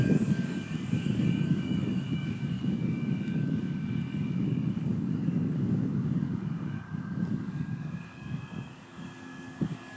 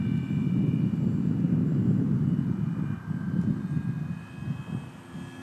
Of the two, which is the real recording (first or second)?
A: second